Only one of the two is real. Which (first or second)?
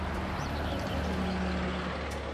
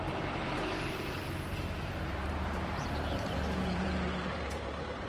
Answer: first